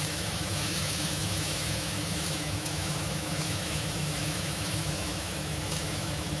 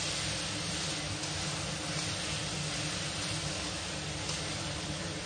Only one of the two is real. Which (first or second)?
second